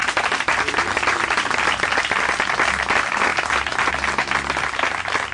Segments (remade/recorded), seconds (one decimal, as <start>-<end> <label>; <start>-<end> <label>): 0.0-1.0 remade; 1.0-5.3 recorded